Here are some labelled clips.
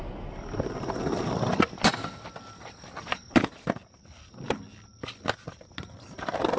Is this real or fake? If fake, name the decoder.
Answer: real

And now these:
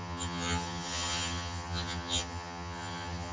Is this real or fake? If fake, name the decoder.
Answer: fake, vocoder, HiFi-GAN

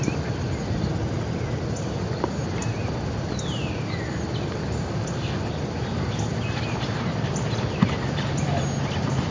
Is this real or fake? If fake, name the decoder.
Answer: real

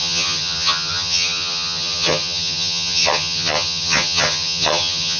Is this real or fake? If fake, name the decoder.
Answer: fake, vocoder, HiFi-GAN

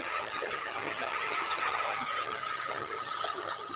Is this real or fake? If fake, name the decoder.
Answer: fake, vocoder, HiFi-GAN